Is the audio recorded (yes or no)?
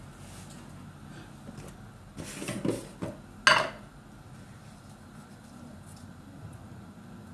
yes